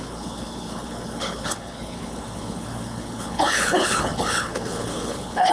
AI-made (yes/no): yes